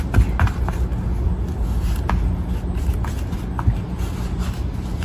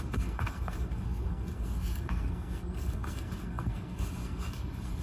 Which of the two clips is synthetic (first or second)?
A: second